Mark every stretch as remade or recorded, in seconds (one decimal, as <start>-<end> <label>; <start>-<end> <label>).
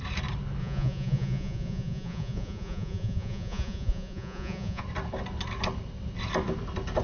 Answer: 0.0-0.6 recorded; 0.6-4.8 remade; 4.8-7.0 recorded